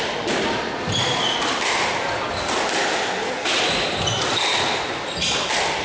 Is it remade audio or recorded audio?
recorded